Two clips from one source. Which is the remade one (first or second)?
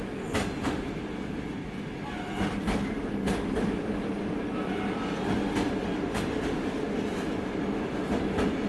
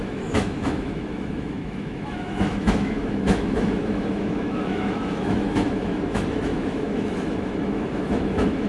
second